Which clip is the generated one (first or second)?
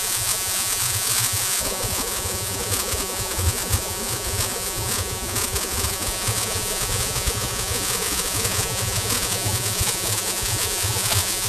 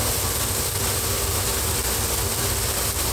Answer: first